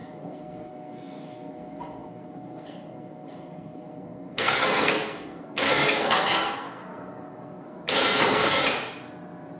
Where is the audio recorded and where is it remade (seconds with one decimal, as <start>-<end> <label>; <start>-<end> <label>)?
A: 0.0-8.6 remade; 8.6-9.6 recorded